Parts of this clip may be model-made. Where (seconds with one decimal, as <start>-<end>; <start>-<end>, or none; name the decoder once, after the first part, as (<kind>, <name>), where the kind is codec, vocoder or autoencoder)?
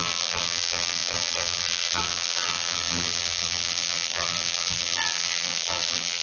0.0-6.2 (vocoder, BigVGAN v2)